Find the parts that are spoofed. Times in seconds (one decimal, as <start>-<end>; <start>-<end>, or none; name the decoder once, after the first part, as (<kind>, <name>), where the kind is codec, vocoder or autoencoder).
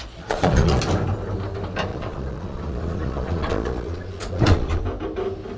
0.0-0.8 (vocoder, Vocos); 1.9-4.8